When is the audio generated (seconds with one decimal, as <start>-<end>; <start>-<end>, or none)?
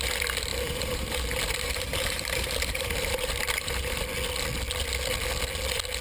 0.5-4.0